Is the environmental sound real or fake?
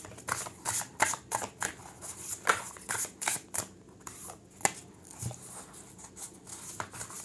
real